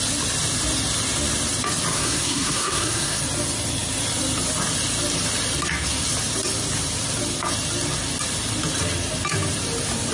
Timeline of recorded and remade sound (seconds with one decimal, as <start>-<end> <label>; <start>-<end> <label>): 0.0-1.9 recorded; 1.9-3.2 remade; 3.2-10.1 recorded